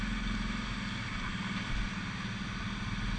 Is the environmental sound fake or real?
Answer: real